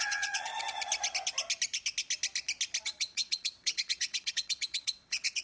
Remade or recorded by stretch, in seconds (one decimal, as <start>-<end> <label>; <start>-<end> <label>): 0.0-0.5 remade; 0.5-2.8 recorded; 2.8-5.4 remade